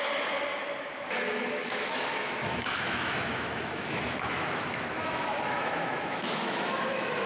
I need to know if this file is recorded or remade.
remade